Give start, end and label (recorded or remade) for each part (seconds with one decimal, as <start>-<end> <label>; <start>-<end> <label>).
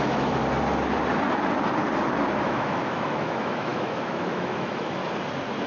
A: 0.0-0.4 remade; 0.4-2.4 recorded; 2.4-5.0 remade; 5.0-5.7 recorded